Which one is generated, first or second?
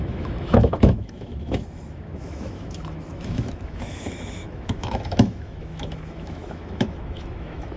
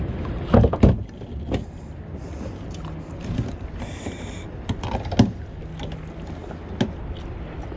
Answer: first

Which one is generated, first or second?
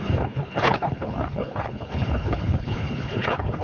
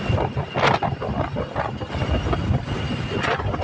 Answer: first